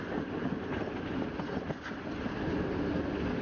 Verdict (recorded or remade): recorded